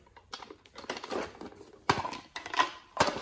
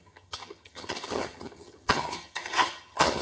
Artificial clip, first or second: second